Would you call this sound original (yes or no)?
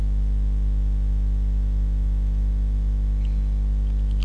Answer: yes